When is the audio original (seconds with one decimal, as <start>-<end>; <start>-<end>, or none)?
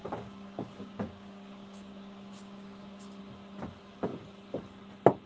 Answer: 3.2-5.3